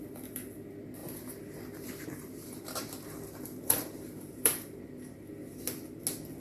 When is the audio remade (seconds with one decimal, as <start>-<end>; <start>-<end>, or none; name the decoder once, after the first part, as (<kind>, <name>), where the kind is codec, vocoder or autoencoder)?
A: 1.0-4.8 (vocoder, BigVGAN v2)